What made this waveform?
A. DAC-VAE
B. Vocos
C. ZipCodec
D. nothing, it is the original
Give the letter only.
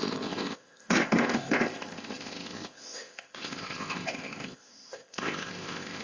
C